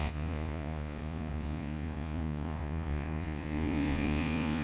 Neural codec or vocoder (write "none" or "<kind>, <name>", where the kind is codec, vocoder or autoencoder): vocoder, Vocos